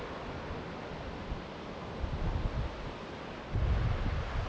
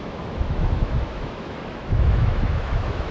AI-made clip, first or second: second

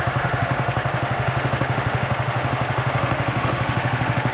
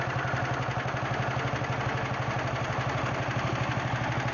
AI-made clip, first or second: first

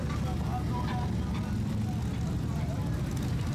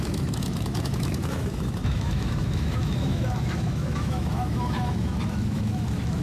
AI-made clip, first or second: second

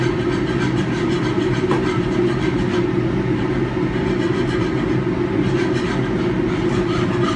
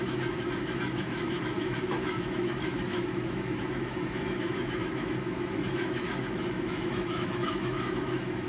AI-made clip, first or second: second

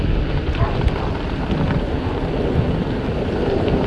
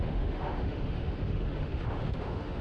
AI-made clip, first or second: second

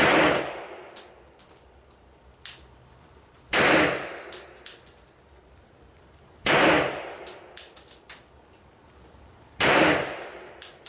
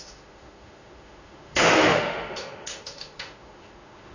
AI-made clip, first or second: second